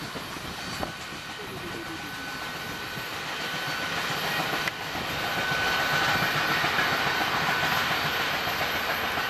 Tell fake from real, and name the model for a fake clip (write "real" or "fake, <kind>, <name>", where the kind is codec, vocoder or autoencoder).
real